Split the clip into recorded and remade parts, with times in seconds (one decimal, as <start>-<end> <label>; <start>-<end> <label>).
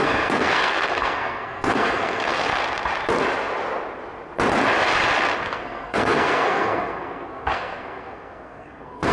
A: 0.0-2.5 remade; 2.5-5.4 recorded; 5.4-9.1 remade